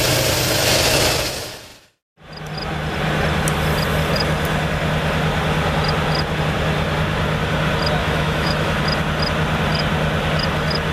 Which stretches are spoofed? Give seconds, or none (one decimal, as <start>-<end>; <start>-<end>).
8.0-8.8